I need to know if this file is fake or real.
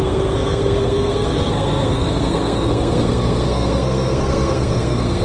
fake